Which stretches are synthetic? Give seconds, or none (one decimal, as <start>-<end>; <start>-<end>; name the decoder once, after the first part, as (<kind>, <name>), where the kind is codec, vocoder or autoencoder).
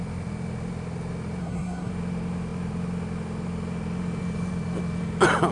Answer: 1.4-1.9 (codec, SNAC)